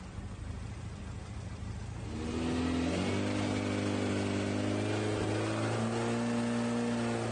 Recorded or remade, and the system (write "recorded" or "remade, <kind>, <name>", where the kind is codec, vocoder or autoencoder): recorded